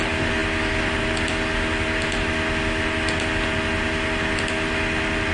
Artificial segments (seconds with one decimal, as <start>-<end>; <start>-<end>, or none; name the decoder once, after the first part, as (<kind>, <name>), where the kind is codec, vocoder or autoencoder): none